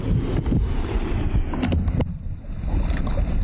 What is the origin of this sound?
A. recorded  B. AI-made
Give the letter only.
B